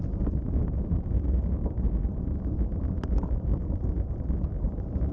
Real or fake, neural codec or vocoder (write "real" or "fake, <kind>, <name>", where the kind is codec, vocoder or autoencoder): real